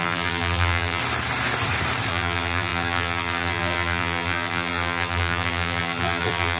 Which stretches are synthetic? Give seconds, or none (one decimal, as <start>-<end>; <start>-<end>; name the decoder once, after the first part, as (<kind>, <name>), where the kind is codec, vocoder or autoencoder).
0.0-1.0 (vocoder, BigVGAN v2); 2.1-6.6